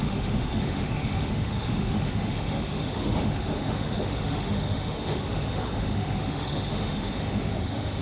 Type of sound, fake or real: fake